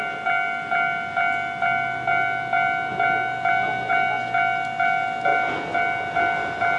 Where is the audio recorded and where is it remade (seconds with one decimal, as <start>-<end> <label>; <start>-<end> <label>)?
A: 0.0-6.8 recorded